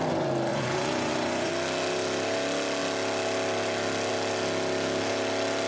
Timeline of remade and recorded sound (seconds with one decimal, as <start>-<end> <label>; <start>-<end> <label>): 0.0-0.5 recorded; 0.5-1.5 remade; 1.5-5.7 recorded